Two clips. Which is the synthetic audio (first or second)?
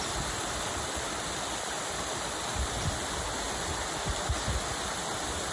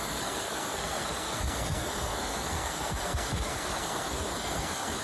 second